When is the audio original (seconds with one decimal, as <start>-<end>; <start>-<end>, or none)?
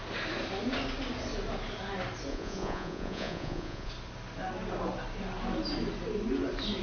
0.0-2.3; 3.9-6.8